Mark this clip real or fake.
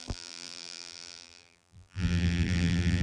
fake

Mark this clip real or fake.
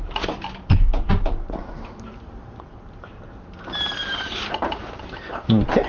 fake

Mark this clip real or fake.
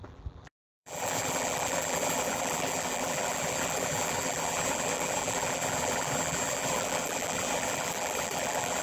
fake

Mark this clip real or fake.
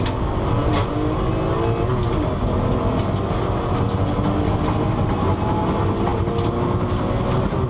real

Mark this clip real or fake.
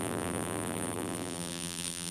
fake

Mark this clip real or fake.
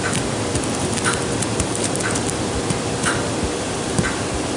fake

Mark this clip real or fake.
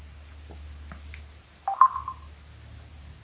real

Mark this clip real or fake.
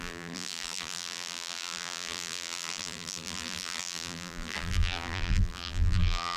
fake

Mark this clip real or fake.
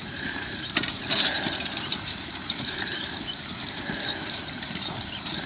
fake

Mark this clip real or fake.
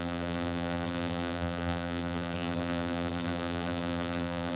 fake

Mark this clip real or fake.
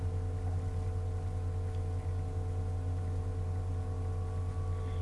real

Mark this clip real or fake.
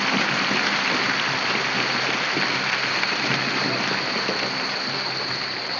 real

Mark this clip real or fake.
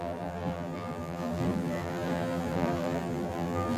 fake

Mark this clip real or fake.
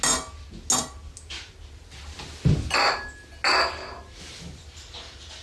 real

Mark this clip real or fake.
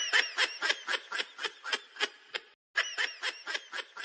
real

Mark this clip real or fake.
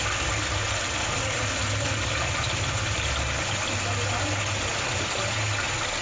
real